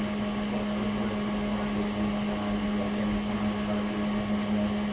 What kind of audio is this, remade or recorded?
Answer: recorded